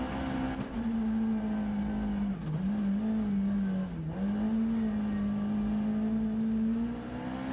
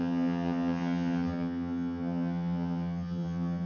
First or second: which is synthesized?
second